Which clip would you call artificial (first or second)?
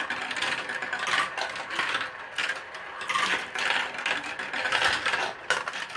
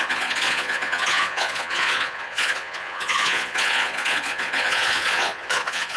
second